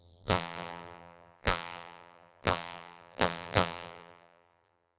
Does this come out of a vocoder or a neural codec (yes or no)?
yes